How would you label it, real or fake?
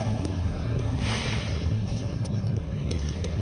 fake